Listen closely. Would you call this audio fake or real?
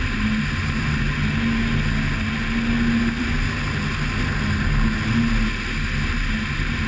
real